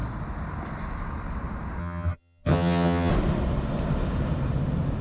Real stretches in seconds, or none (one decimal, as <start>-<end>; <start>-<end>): 0.0-1.8; 3.1-5.0

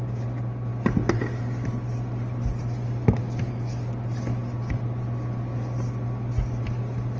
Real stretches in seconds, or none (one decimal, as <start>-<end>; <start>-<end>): 0.0-7.2

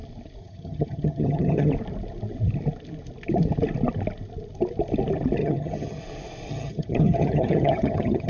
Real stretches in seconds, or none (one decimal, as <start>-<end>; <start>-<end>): 0.0-0.4; 1.7-5.4; 6.0-6.5

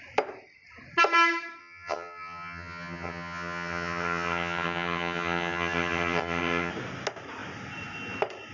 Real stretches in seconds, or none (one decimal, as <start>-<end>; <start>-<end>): 0.0-1.6; 6.7-8.5

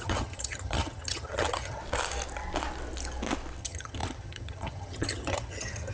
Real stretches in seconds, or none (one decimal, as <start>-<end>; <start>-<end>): 1.8-3.6

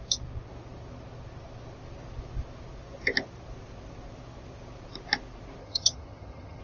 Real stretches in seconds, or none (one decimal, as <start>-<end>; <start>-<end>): 0.0-5.6

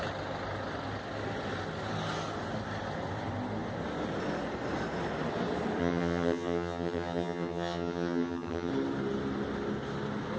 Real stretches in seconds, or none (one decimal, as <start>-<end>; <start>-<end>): 0.0-5.8; 8.7-10.4